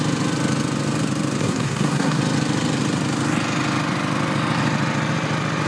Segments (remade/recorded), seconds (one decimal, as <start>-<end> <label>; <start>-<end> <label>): 0.0-1.4 recorded; 1.4-2.2 remade; 2.2-5.7 recorded